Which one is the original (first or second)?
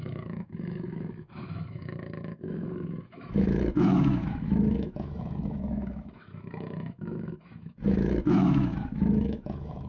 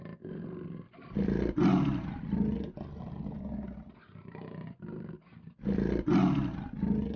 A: second